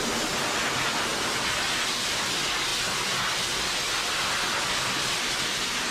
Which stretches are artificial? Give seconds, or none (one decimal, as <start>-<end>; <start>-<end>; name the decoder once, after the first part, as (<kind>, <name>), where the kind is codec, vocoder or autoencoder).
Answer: none

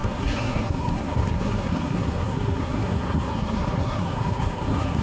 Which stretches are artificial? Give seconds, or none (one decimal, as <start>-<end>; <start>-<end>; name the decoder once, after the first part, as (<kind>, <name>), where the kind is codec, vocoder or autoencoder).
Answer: 0.0-5.0 (codec, SNAC)

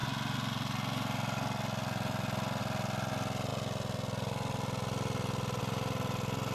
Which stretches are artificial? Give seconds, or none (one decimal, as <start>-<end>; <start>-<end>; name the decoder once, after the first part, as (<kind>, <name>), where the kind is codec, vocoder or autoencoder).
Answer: none